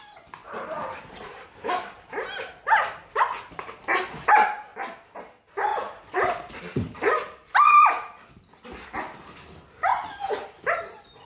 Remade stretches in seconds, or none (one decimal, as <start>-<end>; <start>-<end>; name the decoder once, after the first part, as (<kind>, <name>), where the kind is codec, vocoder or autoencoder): 0.4-2.1 (vocoder, BigVGAN v2)